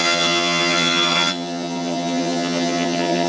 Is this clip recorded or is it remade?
remade